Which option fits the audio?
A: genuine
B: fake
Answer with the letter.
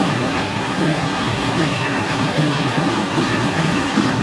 B